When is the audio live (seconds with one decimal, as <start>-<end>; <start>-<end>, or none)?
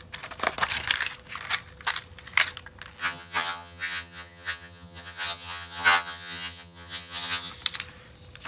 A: 0.0-3.0; 7.5-8.5